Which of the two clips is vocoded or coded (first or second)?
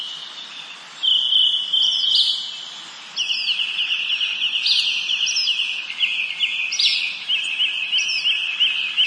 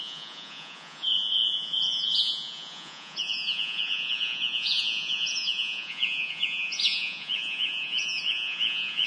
second